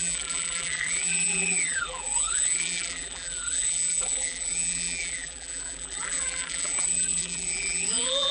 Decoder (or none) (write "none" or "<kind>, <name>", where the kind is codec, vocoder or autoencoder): vocoder, BigVGAN v2